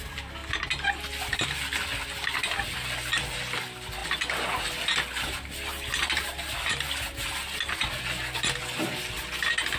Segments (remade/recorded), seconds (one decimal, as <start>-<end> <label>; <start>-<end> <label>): 0.0-9.8 recorded

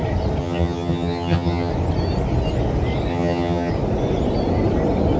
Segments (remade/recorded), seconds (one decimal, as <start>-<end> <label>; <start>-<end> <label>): 0.0-0.4 recorded; 0.4-1.7 remade; 1.7-3.1 recorded; 3.1-3.7 remade; 3.7-5.2 recorded

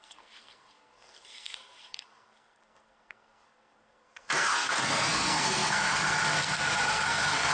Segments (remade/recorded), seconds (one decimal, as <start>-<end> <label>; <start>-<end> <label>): 0.0-7.5 remade